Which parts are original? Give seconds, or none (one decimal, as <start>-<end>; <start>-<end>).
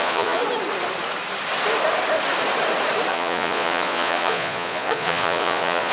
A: 0.4-3.1